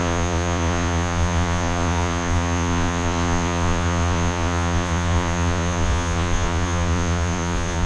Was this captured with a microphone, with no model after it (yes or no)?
no